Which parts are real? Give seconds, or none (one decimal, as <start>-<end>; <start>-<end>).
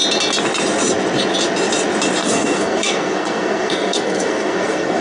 0.0-2.2